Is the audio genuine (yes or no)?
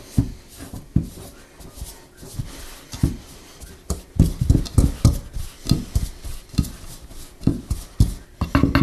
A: yes